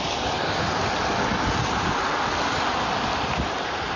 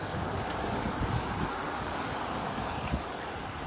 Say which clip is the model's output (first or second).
second